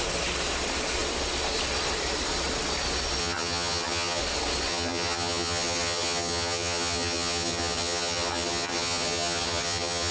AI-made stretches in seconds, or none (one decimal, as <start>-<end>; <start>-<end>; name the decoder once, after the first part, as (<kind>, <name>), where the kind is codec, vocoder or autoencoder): 3.2-4.2 (vocoder, HiFi-GAN); 4.7-10.1